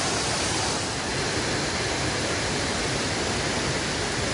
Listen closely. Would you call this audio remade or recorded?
recorded